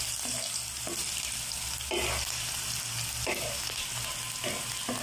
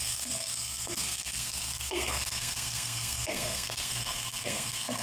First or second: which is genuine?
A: first